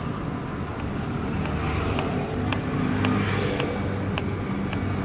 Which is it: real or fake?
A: real